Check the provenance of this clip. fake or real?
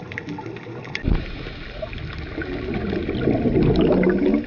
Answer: real